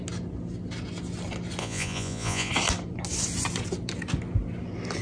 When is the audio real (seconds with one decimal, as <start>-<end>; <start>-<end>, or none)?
0.0-1.6; 2.5-5.0